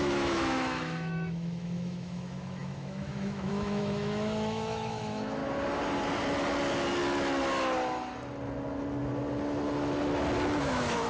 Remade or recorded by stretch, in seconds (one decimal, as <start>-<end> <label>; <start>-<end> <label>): 0.0-5.4 remade; 5.4-10.6 recorded; 10.6-11.1 remade

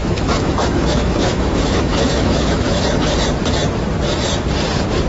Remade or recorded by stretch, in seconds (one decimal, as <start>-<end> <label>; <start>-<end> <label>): 0.0-2.8 remade; 2.8-5.1 recorded

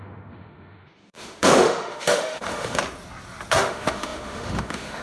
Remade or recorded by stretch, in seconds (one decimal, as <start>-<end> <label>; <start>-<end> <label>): 0.0-2.8 remade; 2.8-3.5 recorded; 3.5-5.0 remade

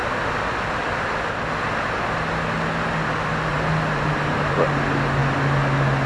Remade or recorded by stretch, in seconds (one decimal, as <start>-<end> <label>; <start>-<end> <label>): 0.0-3.5 recorded; 3.5-4.5 remade; 4.5-6.1 recorded